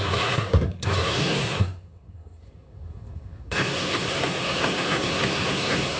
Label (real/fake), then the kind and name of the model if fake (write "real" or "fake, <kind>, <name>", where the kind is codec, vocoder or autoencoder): fake, codec, SNAC